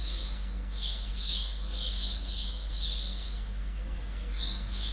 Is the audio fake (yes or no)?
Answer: yes